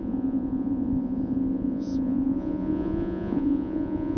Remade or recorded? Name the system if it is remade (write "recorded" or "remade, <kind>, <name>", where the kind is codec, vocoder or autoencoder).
remade, vocoder, Vocos